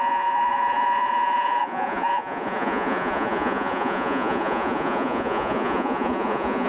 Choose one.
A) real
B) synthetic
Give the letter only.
B